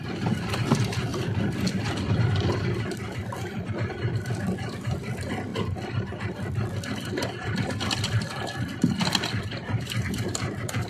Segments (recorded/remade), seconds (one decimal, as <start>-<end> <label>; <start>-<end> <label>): 0.0-5.5 remade; 5.5-6.3 recorded; 6.3-10.9 remade